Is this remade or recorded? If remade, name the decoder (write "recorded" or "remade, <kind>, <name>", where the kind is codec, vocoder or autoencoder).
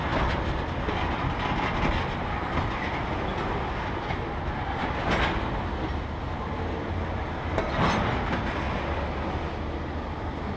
recorded